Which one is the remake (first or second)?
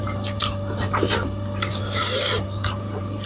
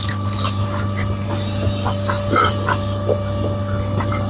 first